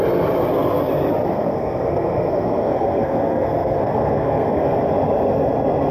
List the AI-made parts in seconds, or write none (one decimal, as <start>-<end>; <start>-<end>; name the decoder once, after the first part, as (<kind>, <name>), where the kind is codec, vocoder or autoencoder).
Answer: 1.3-4.8 (codec, SNAC)